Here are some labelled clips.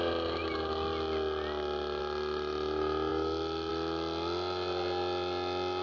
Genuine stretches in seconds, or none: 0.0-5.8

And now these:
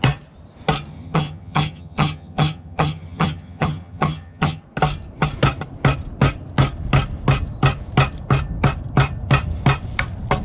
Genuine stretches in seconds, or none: 0.0-0.9; 4.6-10.4

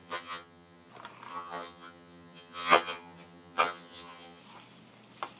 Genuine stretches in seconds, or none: 0.9-1.3; 4.4-5.4

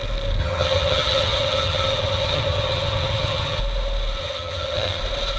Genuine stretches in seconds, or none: 0.0-0.4; 3.6-4.2; 5.0-5.4

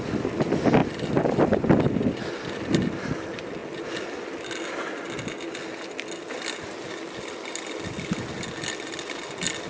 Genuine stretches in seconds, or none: 0.0-9.7